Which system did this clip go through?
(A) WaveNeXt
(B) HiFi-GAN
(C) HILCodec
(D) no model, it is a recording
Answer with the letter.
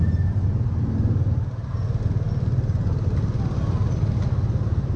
D